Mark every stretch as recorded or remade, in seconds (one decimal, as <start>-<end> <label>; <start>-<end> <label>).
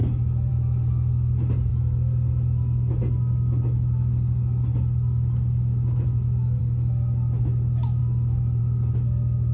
0.0-9.5 recorded